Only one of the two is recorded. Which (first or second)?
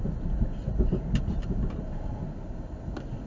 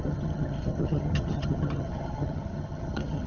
first